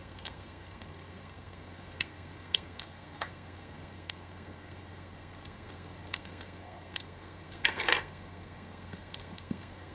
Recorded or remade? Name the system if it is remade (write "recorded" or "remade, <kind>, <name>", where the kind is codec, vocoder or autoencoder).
remade, codec, SNAC